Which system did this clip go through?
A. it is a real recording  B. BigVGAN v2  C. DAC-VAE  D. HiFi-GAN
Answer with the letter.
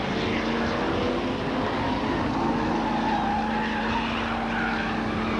A